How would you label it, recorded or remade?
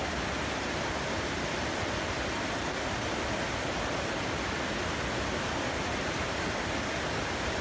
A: recorded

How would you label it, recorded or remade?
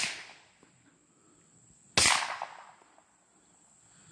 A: recorded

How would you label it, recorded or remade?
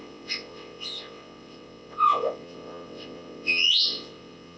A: remade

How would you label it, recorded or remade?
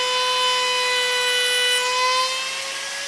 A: recorded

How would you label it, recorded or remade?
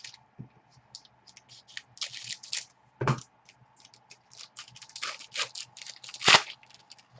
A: recorded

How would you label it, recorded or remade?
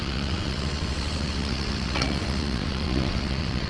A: remade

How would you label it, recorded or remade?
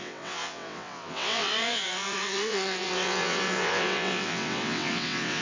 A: remade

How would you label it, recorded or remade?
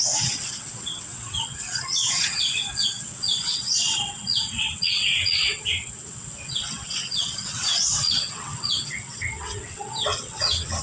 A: remade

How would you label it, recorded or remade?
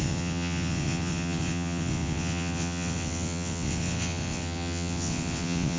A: remade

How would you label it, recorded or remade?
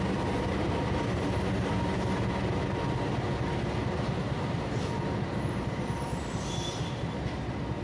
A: recorded